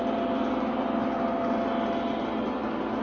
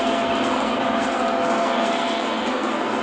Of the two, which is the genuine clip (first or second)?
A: first